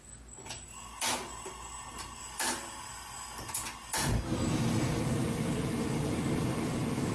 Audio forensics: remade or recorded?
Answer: recorded